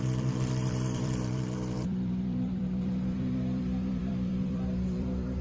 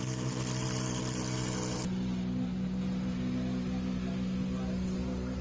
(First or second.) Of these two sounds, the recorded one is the second